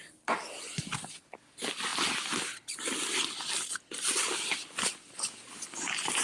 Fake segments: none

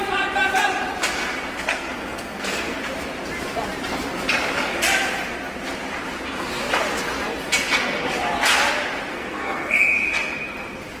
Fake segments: 1.7-2.8 (codec, SNAC); 9.1-9.8

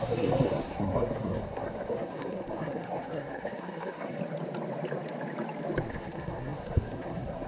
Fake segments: 0.0-4.2 (codec, SNAC); 5.9-7.5

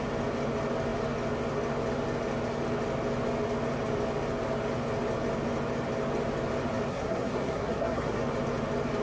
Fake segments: 6.9-8.2 (codec, SNAC)

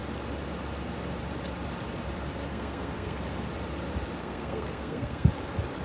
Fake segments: 2.5-3.2 (codec, SNAC); 4.2-5.3

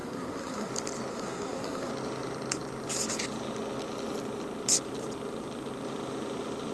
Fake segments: 0.0-0.7 (codec, SNAC); 1.1-1.9

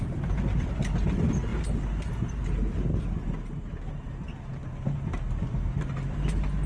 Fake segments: none